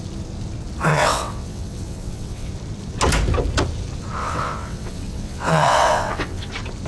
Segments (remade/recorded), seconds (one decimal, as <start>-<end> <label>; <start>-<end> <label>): 0.0-0.9 recorded; 0.9-2.5 remade; 2.5-4.2 recorded; 4.2-6.5 remade; 6.5-6.9 recorded